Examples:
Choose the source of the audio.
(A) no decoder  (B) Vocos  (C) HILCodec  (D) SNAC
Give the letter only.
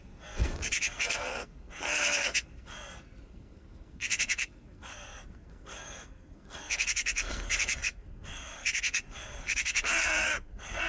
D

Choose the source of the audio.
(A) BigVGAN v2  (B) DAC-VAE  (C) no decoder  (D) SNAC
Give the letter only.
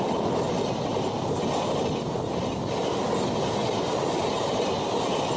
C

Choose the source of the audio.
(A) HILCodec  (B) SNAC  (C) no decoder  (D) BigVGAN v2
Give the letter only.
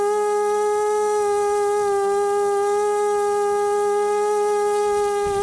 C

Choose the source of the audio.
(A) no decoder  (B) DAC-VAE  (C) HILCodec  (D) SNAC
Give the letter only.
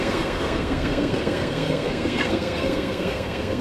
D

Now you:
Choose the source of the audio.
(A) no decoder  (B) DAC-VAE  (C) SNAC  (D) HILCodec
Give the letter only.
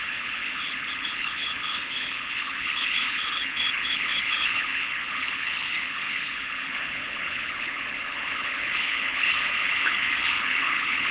D